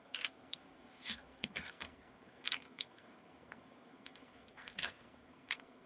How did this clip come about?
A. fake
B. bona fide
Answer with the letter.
A